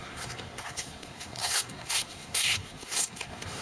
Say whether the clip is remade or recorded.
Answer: remade